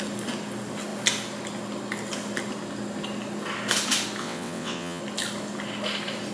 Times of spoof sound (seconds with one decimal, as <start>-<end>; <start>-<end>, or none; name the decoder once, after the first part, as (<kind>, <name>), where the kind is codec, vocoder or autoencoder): 4.2-5.0 (vocoder, WaveNeXt)